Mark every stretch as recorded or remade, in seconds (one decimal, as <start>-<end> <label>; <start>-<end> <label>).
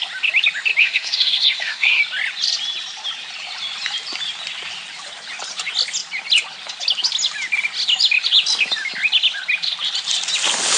0.0-0.8 recorded; 0.8-2.0 remade; 2.0-10.8 recorded